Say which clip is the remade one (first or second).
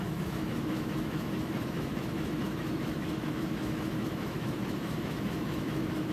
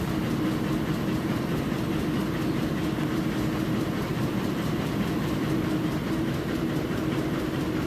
first